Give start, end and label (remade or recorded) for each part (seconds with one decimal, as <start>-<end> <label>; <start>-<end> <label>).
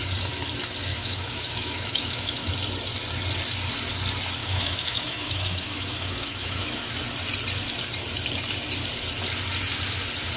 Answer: 0.0-0.9 recorded; 0.9-2.5 remade; 2.5-4.4 recorded; 4.4-6.8 remade; 6.8-10.4 recorded